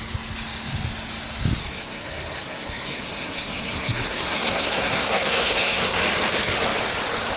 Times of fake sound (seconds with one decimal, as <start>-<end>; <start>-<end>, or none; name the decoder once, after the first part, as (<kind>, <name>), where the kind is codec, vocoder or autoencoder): 1.6-6.0 (codec, SNAC)